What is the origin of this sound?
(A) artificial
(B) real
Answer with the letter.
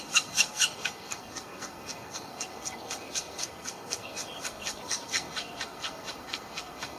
A